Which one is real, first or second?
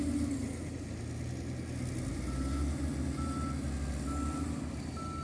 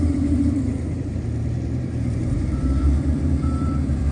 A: first